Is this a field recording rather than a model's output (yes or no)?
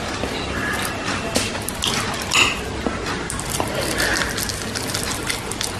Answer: yes